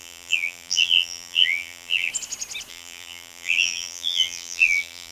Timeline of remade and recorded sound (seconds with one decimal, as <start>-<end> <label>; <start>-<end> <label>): 0.0-2.1 remade; 2.1-2.7 recorded; 2.7-5.1 remade